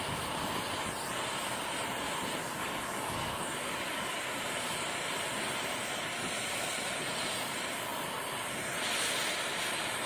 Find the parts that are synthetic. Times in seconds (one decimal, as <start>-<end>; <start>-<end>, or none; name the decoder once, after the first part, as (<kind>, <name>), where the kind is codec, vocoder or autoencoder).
2.4-4.3 (codec, DAC)